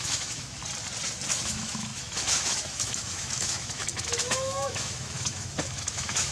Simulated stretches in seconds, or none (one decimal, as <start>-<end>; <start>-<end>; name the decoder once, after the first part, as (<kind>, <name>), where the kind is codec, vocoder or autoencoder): 0.0-0.6 (autoencoder, DAC-VAE); 1.3-6.3